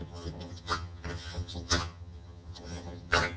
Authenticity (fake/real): fake